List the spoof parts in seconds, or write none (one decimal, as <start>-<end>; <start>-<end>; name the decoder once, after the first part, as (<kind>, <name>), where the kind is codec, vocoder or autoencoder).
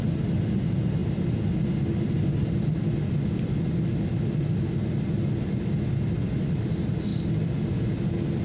none